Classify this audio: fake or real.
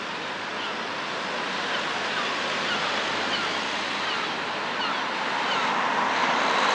real